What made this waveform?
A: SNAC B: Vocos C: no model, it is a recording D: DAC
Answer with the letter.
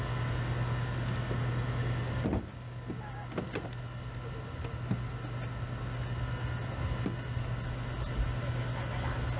C